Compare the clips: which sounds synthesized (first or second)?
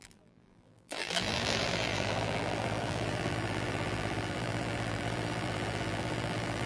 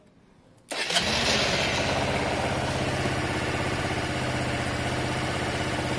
first